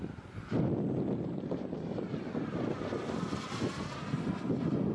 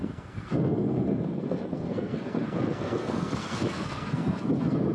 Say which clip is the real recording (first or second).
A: first